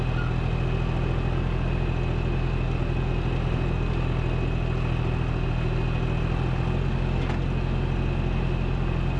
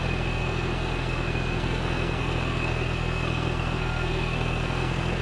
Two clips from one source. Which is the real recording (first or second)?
first